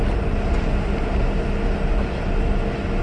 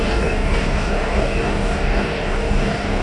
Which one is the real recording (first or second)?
first